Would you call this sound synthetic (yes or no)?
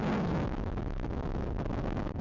yes